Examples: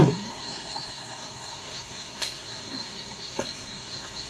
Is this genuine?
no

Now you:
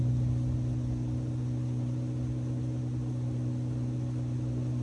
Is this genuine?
yes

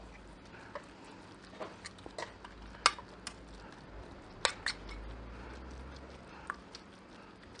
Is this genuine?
yes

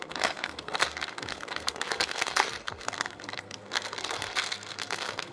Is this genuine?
no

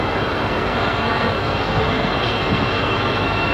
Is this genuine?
no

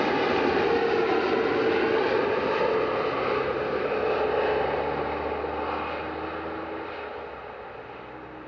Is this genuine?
yes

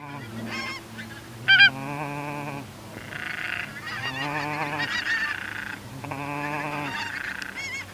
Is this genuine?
yes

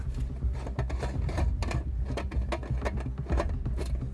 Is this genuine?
yes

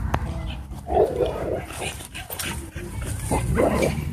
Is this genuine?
yes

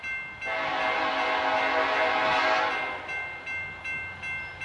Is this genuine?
yes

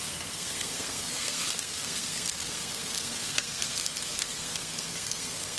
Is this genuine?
no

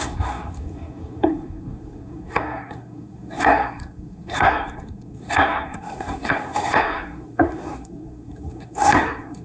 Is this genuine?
no